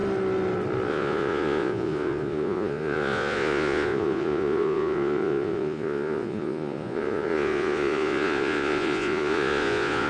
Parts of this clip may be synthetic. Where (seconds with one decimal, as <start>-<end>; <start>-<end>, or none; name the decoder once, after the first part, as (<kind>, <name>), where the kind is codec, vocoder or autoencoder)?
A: 0.9-10.1 (vocoder, Vocos)